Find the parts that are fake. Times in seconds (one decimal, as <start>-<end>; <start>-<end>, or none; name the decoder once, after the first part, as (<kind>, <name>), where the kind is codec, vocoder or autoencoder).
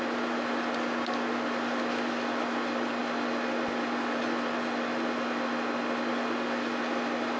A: none